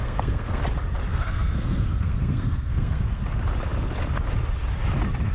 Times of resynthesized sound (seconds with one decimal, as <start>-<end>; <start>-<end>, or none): 0.0-0.6; 1.1-3.2

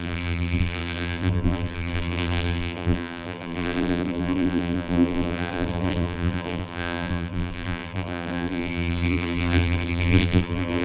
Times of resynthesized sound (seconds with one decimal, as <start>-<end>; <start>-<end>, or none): 0.0-10.8

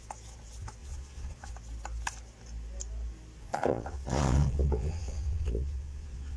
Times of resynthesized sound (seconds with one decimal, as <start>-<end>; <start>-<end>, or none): 0.8-1.5; 3.4-6.4

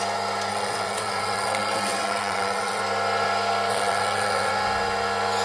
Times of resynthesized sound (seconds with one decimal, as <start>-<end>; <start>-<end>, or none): 0.5-2.8; 3.7-4.5

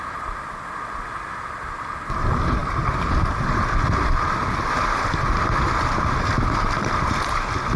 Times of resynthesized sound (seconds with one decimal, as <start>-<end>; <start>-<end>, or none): none